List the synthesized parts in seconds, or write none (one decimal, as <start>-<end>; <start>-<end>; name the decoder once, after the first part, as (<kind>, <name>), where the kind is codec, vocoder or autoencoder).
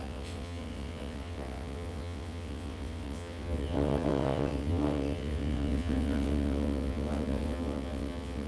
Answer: 0.0-8.5 (vocoder, WaveNeXt)